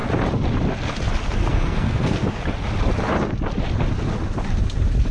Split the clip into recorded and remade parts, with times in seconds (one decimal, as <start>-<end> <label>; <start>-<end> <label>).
0.0-1.5 recorded; 1.5-2.4 remade; 2.4-5.1 recorded